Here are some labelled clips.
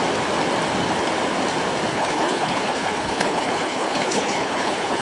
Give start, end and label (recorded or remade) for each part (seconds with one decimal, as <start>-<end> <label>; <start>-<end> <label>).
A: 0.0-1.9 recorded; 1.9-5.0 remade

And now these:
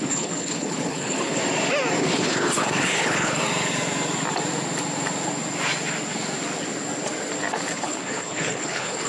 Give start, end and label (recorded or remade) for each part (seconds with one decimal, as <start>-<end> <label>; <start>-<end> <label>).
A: 0.0-1.4 remade; 1.4-2.0 recorded; 2.0-3.4 remade; 3.4-7.7 recorded; 7.7-9.1 remade

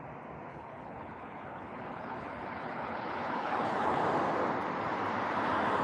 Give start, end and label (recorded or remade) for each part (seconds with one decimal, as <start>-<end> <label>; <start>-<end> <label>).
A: 0.0-0.5 recorded; 0.5-4.0 remade; 4.0-5.8 recorded

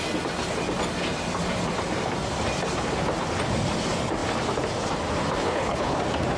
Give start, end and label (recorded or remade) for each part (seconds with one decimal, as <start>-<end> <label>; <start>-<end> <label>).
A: 0.0-5.4 recorded; 5.4-6.0 remade; 6.0-6.4 recorded

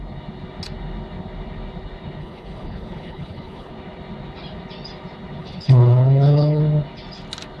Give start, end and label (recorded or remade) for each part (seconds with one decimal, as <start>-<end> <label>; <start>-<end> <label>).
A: 0.0-2.2 recorded; 2.2-3.7 remade; 3.7-5.4 recorded; 5.4-6.6 remade; 6.6-7.6 recorded